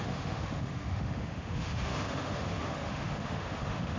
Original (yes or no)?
no